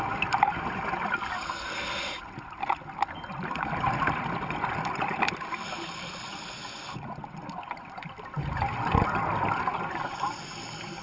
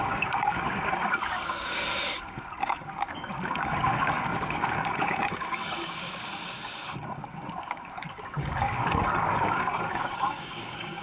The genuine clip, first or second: first